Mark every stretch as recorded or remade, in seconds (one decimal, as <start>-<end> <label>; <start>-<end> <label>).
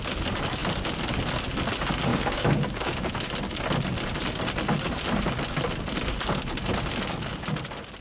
0.0-2.1 recorded; 2.1-3.1 remade; 3.1-8.0 recorded